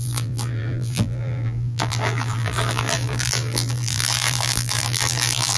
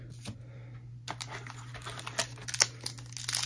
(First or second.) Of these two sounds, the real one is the second